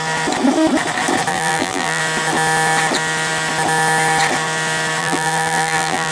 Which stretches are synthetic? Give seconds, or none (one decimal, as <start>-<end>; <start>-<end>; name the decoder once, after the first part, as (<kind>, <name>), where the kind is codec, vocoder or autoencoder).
1.3-2.0 (vocoder, BigVGAN v2); 5.0-6.1